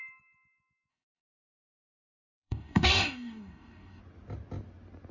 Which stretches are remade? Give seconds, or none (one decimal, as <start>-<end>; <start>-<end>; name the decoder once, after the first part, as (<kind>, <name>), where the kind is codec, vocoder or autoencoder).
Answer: 0.9-4.0 (codec, DAC)